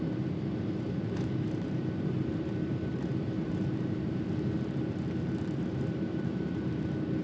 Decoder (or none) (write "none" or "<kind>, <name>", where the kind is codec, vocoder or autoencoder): vocoder, BigVGAN v2